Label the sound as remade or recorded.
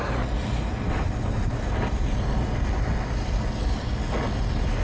recorded